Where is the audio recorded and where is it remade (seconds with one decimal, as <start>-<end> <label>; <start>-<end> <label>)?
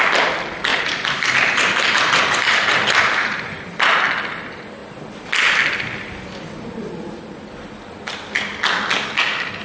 0.0-0.7 recorded; 0.7-4.0 remade; 4.0-9.6 recorded